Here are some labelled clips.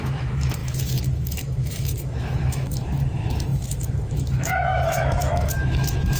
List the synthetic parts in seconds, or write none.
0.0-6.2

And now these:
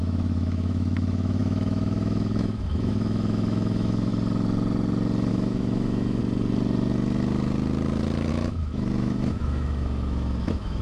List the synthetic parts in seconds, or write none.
0.0-4.1; 5.3-6.2; 8.3-10.8

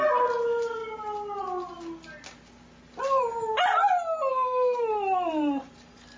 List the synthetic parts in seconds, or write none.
4.3-4.8

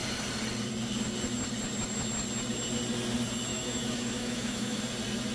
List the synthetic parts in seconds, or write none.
3.5-4.8

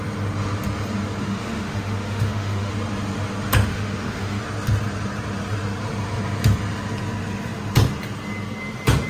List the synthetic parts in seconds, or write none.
1.2-2.7; 3.7-4.4

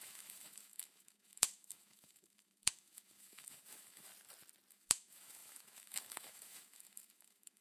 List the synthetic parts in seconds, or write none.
0.0-4.1; 4.7-7.6

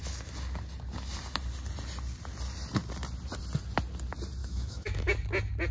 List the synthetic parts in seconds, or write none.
4.4-5.1